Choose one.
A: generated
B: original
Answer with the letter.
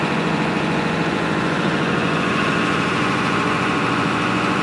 A